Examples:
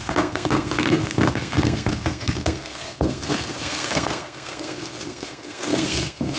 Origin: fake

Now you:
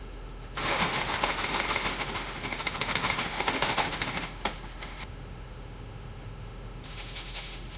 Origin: fake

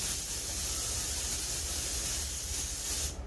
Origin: real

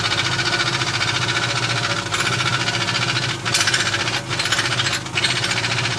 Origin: real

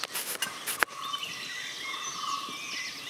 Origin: real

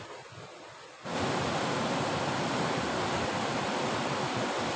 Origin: real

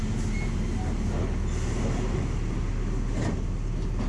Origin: real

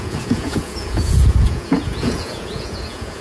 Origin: fake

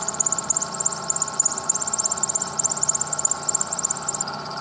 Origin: fake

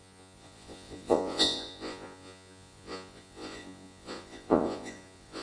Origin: fake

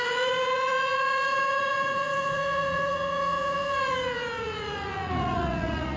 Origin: fake